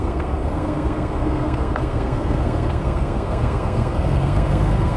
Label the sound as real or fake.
fake